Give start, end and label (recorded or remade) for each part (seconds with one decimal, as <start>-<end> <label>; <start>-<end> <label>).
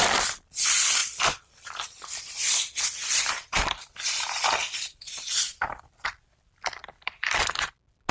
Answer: 0.0-1.0 recorded; 1.0-2.2 remade; 2.2-3.0 recorded; 3.0-5.8 remade; 5.8-6.8 recorded; 6.8-7.5 remade; 7.5-8.1 recorded